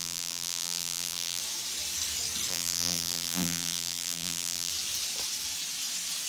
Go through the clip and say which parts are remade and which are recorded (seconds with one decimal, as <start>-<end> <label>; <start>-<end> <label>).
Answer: 0.0-1.4 remade; 1.4-2.5 recorded; 2.5-4.7 remade; 4.7-6.3 recorded